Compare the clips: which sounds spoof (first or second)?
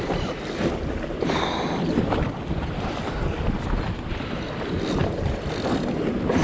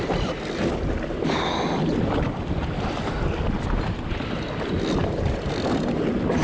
first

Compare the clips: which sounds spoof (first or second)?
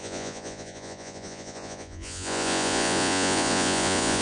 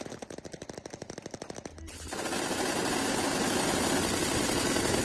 first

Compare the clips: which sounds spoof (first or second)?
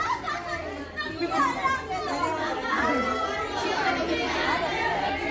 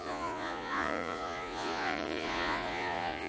second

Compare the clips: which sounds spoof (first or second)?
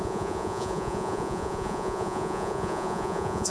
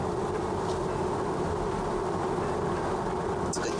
first